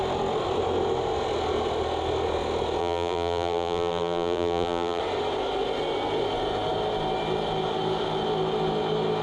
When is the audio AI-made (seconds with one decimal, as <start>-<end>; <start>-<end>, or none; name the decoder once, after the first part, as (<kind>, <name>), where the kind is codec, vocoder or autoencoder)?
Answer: 2.8-5.0 (vocoder, BigVGAN v2)

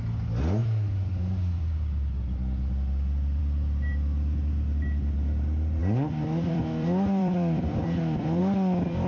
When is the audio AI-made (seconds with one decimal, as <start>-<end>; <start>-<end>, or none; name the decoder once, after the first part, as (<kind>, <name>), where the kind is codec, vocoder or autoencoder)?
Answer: 5.8-8.4 (vocoder, BigVGAN v2)

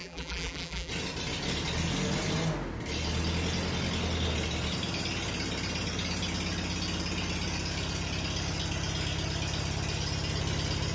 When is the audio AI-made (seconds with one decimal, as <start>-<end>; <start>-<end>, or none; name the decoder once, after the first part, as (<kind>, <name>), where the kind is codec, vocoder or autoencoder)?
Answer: 0.0-0.9 (vocoder, BigVGAN v2)

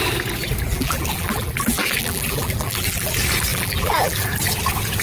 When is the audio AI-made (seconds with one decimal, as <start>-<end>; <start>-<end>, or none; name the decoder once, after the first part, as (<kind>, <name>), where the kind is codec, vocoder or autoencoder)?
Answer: 0.7-3.1 (vocoder, BigVGAN v2); 3.5-4.3

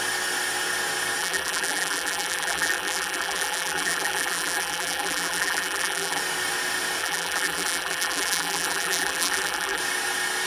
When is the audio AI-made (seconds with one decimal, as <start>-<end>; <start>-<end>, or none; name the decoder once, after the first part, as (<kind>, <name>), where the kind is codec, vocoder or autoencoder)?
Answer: 1.2-6.2 (vocoder, BigVGAN v2); 7.0-9.8

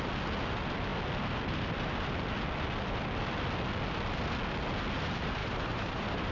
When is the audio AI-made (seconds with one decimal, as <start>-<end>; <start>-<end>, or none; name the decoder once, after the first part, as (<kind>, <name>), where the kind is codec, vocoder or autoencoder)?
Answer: 5.4-6.3 (vocoder, BigVGAN v2)